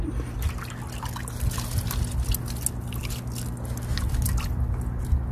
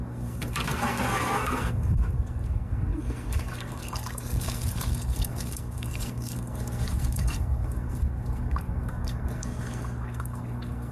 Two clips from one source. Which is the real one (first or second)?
first